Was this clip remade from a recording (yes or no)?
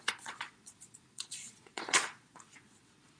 yes